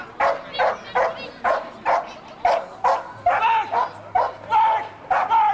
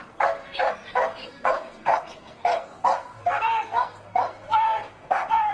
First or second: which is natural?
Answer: first